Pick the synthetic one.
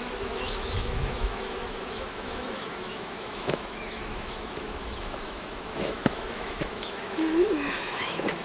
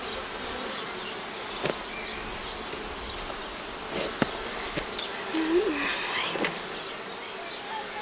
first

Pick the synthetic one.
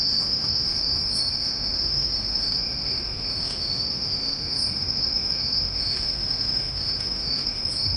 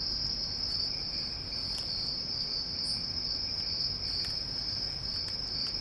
first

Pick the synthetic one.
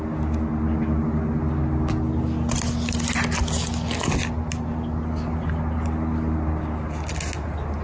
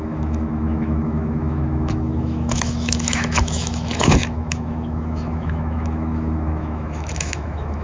second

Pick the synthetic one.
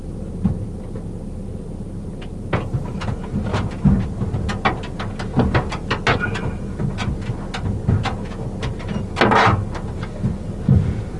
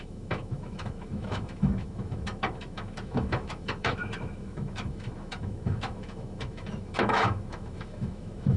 second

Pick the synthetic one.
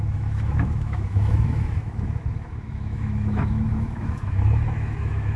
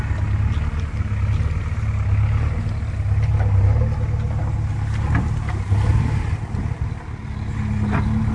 first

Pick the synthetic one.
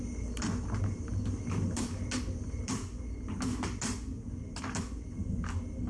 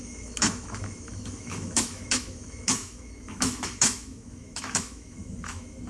second